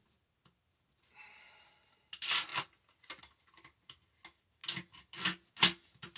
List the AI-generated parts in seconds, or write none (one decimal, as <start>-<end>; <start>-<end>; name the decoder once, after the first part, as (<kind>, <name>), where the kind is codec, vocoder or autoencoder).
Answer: none